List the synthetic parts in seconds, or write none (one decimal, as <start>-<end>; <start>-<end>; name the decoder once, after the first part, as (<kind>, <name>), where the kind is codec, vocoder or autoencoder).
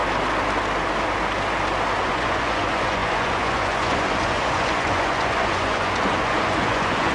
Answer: 2.0-7.1 (vocoder, Vocos)